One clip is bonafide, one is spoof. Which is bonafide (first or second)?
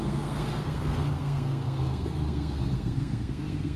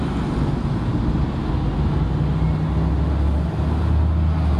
second